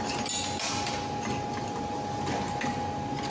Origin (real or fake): real